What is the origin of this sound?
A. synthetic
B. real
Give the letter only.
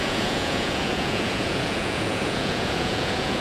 A